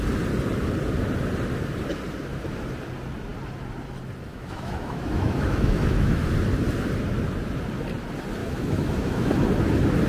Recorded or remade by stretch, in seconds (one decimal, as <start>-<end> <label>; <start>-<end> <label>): 0.0-4.3 recorded; 4.3-6.3 remade; 6.3-8.4 recorded; 8.4-9.3 remade; 9.3-10.1 recorded